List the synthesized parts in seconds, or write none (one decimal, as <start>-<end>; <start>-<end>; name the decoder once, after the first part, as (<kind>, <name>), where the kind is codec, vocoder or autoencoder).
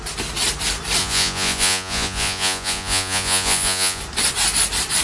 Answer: 1.0-4.0 (vocoder, Vocos)